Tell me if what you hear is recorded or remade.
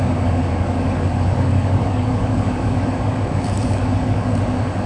remade